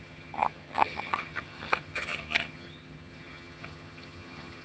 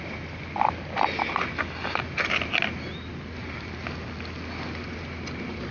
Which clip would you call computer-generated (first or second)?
first